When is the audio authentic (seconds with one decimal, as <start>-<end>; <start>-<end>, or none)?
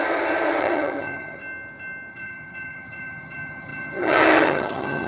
0.0-0.6; 1.4-2.1